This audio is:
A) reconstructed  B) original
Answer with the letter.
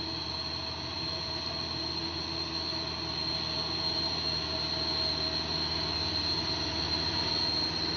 B